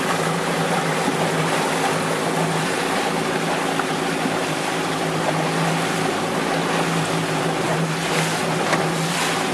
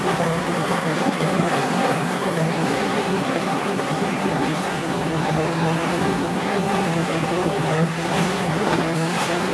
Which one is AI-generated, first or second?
second